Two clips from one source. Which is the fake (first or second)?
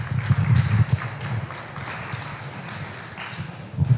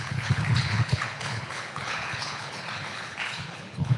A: second